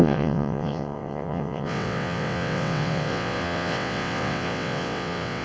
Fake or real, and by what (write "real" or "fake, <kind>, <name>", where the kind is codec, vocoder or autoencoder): fake, vocoder, WaveNeXt